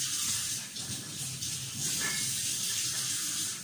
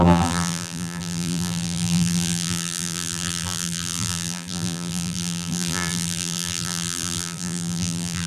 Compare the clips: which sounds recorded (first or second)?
first